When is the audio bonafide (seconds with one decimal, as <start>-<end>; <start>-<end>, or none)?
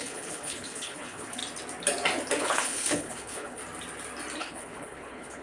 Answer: 1.4-2.4; 3.6-4.4